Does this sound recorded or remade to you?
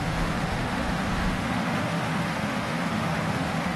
remade